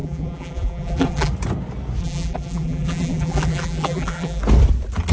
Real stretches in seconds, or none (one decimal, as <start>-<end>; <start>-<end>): 1.3-2.0; 4.4-5.1